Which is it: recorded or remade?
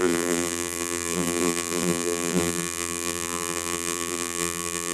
remade